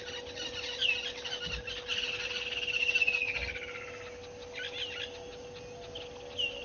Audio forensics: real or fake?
real